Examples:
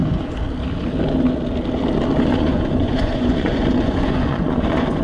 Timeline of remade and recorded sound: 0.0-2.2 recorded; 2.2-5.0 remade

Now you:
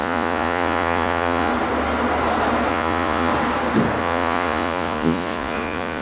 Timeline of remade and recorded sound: 0.0-1.5 remade; 1.5-2.7 recorded; 2.7-3.3 remade; 3.3-4.0 recorded; 4.0-6.0 remade